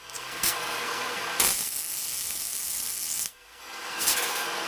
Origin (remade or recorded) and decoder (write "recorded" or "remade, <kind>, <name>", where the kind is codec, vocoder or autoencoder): remade, codec, SNAC